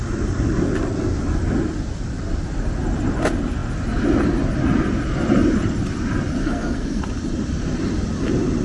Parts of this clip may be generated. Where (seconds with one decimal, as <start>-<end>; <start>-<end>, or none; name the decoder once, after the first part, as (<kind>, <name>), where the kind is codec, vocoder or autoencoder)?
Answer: 6.4-7.0 (codec, SNAC)